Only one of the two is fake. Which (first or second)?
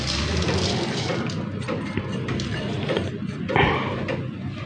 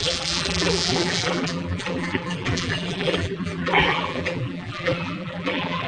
second